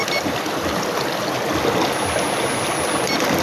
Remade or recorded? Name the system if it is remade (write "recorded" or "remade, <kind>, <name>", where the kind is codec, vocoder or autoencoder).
recorded